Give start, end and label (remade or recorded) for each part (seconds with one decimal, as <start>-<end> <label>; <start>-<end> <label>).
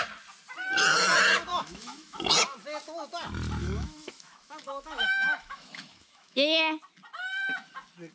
0.0-1.5 recorded; 1.5-2.3 remade; 2.3-3.6 recorded; 3.6-6.6 remade; 6.6-8.1 recorded